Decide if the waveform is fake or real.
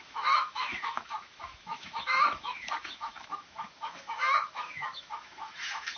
fake